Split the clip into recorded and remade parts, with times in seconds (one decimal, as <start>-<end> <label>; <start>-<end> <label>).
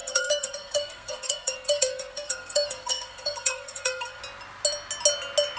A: 0.0-4.2 remade; 4.2-5.6 recorded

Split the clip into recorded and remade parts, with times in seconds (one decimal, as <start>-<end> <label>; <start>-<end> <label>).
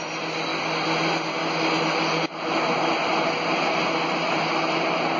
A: 0.0-5.2 recorded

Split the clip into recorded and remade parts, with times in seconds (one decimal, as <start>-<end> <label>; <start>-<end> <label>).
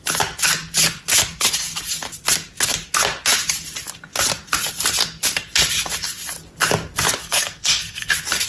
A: 0.0-7.2 recorded; 7.2-8.1 remade; 8.1-8.5 recorded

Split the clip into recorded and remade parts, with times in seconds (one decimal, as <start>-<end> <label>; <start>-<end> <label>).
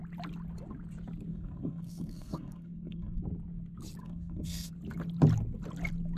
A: 0.0-1.3 recorded; 1.3-3.2 remade; 3.2-4.0 recorded; 4.0-4.7 remade; 4.7-6.2 recorded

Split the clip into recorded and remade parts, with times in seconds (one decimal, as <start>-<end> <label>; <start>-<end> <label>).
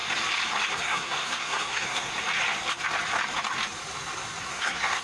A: 0.0-0.7 recorded; 0.7-2.1 remade; 2.1-4.4 recorded; 4.4-5.0 remade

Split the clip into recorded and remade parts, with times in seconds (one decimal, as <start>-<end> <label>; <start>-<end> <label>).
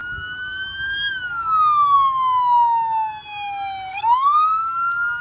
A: 0.0-3.9 recorded; 3.9-4.6 remade; 4.6-5.2 recorded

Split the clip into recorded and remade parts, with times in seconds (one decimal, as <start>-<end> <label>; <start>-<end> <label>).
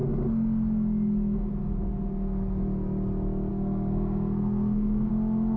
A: 0.0-3.5 recorded; 3.5-5.1 remade; 5.1-5.6 recorded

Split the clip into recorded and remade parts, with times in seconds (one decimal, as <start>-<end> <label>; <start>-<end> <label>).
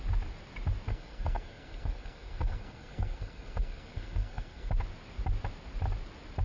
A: 0.0-0.9 recorded; 0.9-4.7 remade; 4.7-6.4 recorded